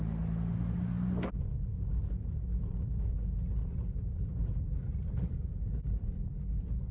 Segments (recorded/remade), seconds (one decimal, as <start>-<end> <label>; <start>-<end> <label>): 0.0-1.7 recorded; 1.7-3.1 remade; 3.1-4.1 recorded; 4.1-6.4 remade; 6.4-6.9 recorded